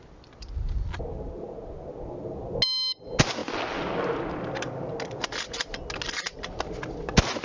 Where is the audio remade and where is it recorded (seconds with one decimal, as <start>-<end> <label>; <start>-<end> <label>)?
0.0-7.4 recorded